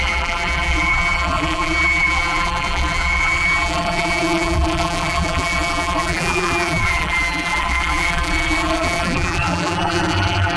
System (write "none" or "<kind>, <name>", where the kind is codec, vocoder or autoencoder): vocoder, BigVGAN v2